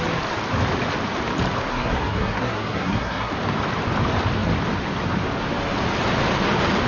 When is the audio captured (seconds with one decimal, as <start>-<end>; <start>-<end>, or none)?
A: 0.0-1.7; 3.3-6.9